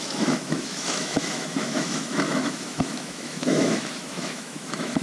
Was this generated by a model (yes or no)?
yes